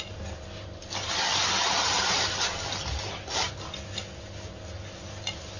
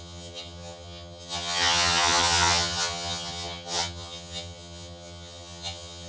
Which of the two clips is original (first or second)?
first